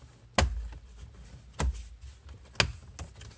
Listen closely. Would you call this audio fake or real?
real